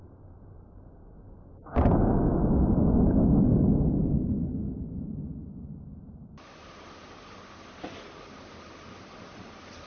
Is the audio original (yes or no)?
yes